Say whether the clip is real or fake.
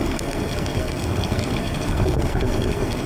fake